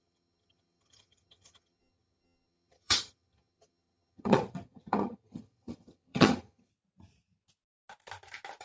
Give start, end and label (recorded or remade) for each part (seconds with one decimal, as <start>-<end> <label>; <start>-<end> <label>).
0.0-6.7 remade; 6.7-8.6 recorded